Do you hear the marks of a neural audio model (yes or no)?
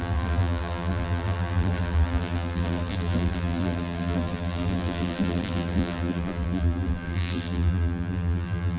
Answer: yes